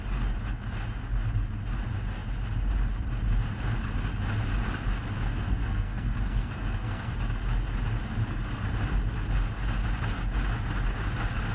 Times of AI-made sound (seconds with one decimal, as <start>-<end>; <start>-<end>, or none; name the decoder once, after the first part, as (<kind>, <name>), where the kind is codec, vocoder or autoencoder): 5.4-7.1 (codec, SNAC)